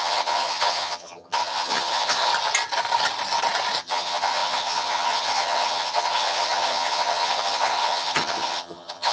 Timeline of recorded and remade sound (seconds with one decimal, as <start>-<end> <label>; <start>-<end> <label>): 0.0-2.3 remade; 2.3-3.8 recorded; 3.8-9.1 remade